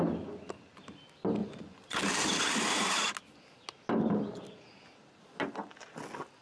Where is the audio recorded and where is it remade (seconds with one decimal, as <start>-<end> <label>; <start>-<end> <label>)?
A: 0.0-1.4 recorded; 1.4-2.0 remade; 2.0-6.4 recorded